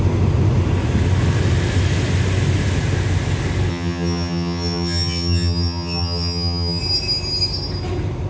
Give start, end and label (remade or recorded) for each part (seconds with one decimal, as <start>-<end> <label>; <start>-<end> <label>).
0.0-3.7 recorded; 3.7-6.8 remade; 6.8-8.3 recorded